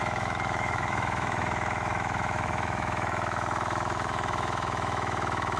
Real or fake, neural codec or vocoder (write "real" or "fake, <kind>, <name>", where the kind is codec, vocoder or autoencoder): fake, autoencoder, DAC-VAE